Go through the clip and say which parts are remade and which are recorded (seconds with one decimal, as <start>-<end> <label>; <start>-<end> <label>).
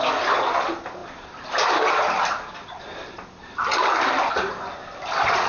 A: 0.0-5.5 recorded